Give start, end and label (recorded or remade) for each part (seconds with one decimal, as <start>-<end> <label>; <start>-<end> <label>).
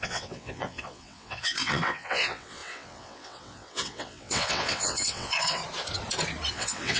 0.0-5.6 remade; 5.6-6.5 recorded; 6.5-7.0 remade